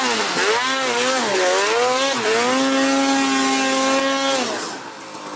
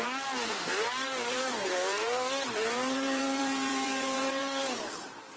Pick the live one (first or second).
first